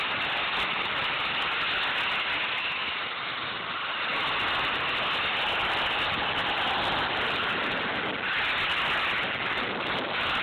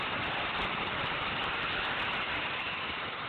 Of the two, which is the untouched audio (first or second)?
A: first